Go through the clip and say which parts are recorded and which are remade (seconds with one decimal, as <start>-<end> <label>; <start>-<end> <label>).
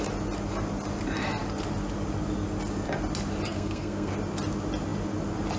0.0-3.5 recorded; 3.5-4.1 remade; 4.1-5.6 recorded